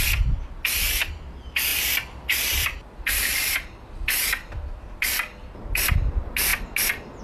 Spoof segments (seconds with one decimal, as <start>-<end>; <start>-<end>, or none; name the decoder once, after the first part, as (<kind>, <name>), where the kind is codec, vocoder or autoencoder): 1.7-5.6 (vocoder, BigVGAN v2)